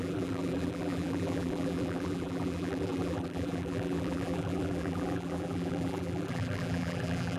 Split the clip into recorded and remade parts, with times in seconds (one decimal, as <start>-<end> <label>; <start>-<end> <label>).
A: 0.0-7.4 remade